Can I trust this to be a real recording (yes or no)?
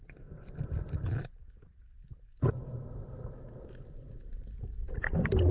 yes